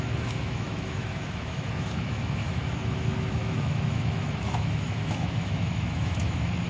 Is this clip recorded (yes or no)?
no